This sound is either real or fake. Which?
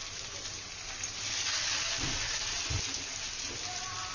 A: real